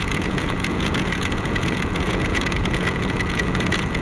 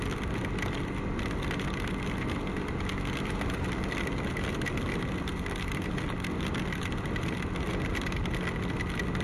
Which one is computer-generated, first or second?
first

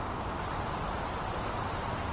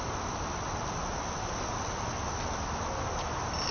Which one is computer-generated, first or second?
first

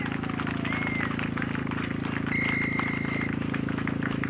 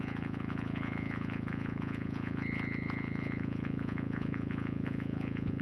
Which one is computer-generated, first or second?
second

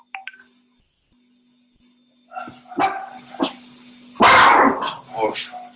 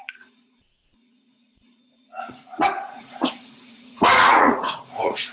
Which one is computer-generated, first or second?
second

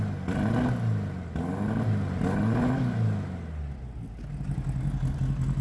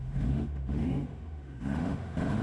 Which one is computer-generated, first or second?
second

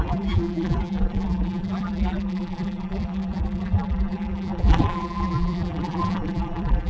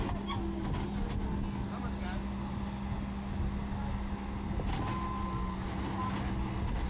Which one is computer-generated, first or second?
first